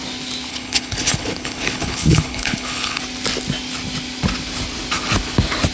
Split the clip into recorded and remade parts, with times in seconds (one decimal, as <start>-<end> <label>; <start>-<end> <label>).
0.0-0.5 recorded; 0.5-3.0 remade; 3.0-5.7 recorded

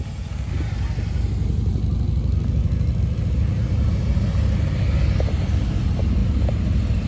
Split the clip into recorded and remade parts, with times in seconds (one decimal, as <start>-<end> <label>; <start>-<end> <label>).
0.0-7.1 recorded

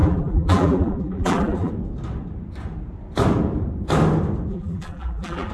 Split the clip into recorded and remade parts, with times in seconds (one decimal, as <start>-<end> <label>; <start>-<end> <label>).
0.0-1.7 remade; 1.7-4.5 recorded; 4.5-5.5 remade

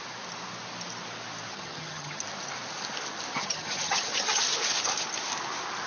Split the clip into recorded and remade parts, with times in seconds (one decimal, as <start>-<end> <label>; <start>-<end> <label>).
0.0-1.5 recorded; 1.5-2.2 remade; 2.2-3.3 recorded; 3.3-4.4 remade; 4.4-5.9 recorded

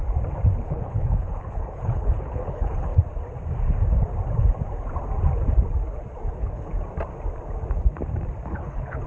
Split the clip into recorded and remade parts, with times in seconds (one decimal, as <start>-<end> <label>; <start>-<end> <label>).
0.0-0.6 recorded; 0.6-2.9 remade; 2.9-6.3 recorded; 6.3-6.7 remade; 6.7-8.5 recorded; 8.5-9.1 remade